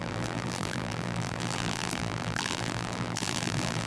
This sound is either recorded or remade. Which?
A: remade